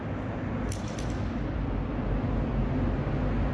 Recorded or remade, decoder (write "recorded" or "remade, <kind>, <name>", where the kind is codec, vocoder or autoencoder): recorded